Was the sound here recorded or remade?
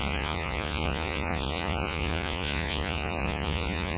remade